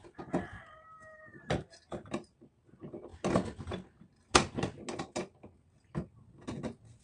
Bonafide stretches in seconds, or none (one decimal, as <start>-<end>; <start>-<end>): 0.0-7.0